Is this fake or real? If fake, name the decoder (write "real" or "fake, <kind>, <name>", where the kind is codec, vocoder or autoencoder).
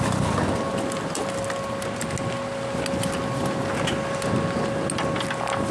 real